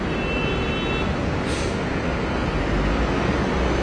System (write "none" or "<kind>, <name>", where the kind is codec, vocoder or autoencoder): none